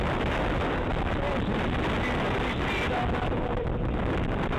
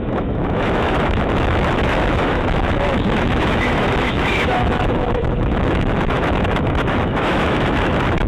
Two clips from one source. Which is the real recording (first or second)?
first